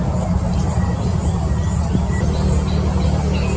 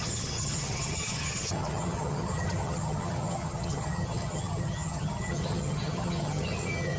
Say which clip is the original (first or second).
first